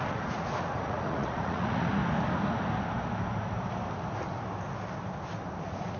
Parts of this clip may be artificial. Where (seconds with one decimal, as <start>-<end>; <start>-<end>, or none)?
0.0-2.0; 5.6-6.0